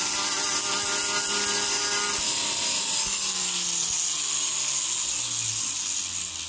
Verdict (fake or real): real